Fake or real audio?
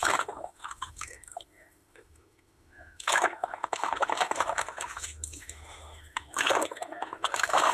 fake